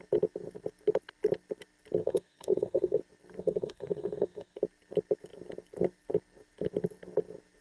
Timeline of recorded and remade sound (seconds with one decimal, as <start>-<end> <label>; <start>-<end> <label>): 0.0-2.0 recorded; 2.0-3.0 remade; 3.0-3.4 recorded; 3.4-4.6 remade; 4.6-7.6 recorded